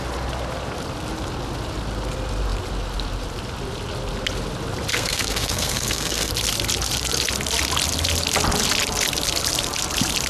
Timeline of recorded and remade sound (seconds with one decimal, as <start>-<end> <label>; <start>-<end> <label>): 0.0-4.9 recorded; 4.9-6.3 remade; 6.3-10.3 recorded